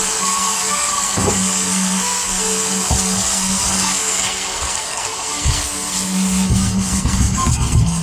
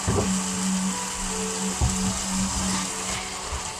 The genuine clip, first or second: second